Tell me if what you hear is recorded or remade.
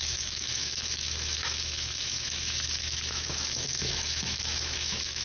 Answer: remade